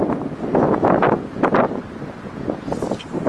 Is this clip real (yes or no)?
yes